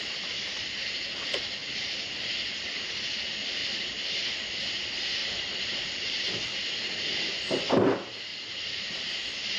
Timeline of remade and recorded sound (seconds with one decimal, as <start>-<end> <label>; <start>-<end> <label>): 0.0-1.6 recorded; 1.6-2.2 remade; 2.2-3.6 recorded; 3.6-4.1 remade; 4.1-5.2 recorded; 5.2-6.2 remade; 6.2-8.3 recorded; 8.3-9.1 remade; 9.1-9.6 recorded